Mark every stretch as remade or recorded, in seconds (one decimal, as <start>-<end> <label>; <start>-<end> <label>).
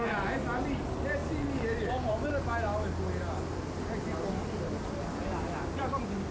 0.0-6.3 recorded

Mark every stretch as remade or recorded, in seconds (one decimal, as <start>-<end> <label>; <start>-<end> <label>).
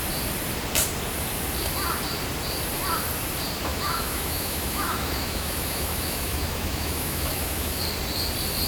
0.0-3.7 recorded; 3.7-7.8 remade; 7.8-8.7 recorded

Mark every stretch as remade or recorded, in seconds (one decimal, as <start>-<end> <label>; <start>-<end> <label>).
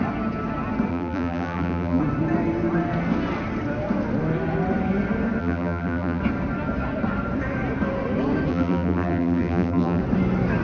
0.0-0.9 recorded; 0.9-2.0 remade; 2.0-5.4 recorded; 5.4-6.2 remade; 6.2-8.5 recorded; 8.5-10.0 remade; 10.0-10.6 recorded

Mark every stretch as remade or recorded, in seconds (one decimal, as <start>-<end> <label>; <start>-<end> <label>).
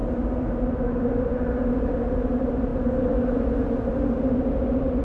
0.0-5.0 recorded